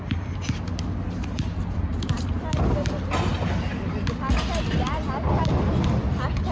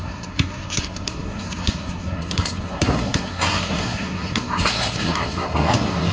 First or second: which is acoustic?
first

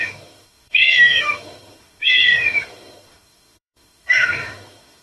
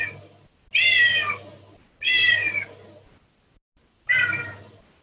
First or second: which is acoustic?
second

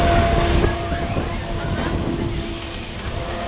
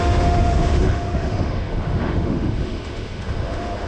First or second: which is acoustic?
first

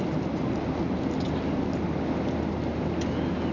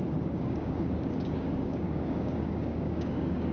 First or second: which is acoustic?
first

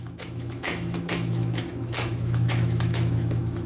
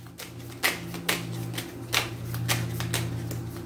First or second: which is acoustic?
second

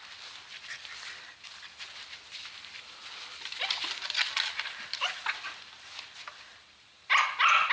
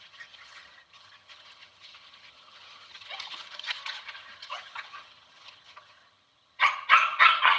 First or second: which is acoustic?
first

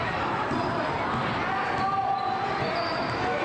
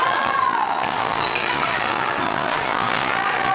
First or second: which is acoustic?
first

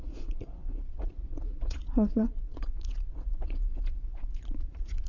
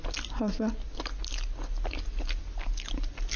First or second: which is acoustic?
second